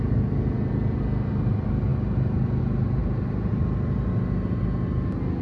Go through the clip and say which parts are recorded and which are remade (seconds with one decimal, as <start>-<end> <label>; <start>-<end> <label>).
0.0-3.0 recorded; 3.0-4.1 remade; 4.1-5.4 recorded